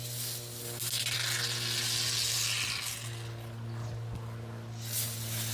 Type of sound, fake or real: real